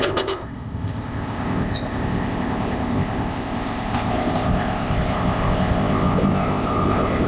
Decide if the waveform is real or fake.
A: fake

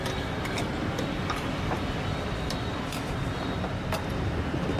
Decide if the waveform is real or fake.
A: real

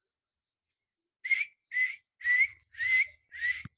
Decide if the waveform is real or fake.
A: real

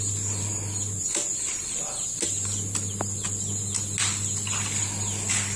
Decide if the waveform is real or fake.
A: real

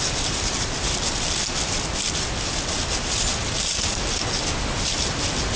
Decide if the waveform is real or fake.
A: real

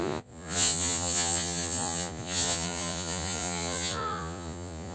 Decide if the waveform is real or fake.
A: fake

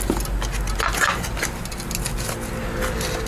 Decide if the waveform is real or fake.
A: real